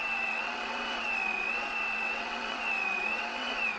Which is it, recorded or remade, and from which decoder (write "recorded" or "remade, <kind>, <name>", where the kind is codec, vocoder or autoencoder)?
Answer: remade, vocoder, WaveNeXt